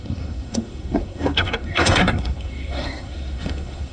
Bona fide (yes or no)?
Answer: no